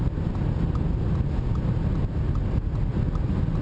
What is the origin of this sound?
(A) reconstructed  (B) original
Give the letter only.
B